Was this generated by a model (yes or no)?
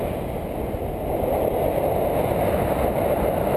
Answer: no